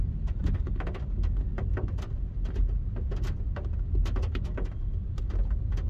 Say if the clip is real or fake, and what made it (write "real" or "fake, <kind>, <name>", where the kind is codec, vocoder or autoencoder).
real